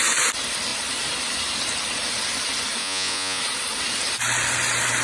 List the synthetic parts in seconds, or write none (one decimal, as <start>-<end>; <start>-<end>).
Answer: 2.8-3.4

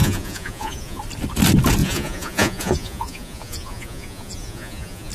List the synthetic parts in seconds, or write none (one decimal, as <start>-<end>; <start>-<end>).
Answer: 0.0-1.0; 1.8-5.1

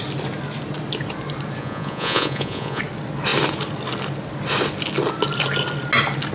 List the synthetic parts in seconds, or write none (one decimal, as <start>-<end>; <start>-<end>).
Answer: 1.6-2.8

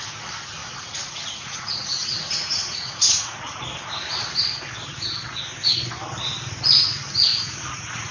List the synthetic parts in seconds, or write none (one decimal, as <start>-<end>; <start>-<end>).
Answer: 0.6-3.6; 7.3-8.1